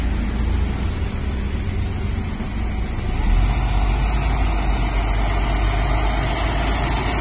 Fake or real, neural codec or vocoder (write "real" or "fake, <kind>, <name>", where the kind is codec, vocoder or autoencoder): real